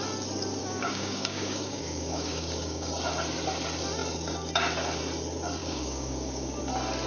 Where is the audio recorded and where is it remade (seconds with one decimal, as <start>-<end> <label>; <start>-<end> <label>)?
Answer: 0.0-0.6 recorded; 0.6-2.9 remade; 2.9-5.6 recorded; 5.6-6.6 remade; 6.6-7.1 recorded